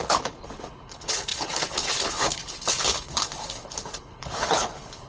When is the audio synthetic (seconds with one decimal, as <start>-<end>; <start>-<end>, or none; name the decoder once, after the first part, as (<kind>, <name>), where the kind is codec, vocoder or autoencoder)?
0.0-5.1 (codec, HILCodec)